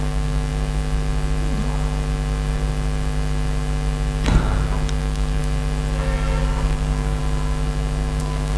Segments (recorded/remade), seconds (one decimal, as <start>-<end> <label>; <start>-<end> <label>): 0.0-0.5 remade; 0.5-5.0 recorded; 5.0-5.4 remade; 5.4-6.4 recorded; 6.4-7.2 remade; 7.2-8.2 recorded; 8.2-8.6 remade